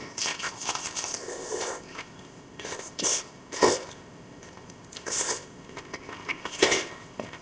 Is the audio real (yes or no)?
no